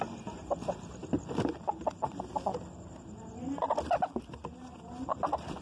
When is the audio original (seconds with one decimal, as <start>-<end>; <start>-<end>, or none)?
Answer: 0.0-5.6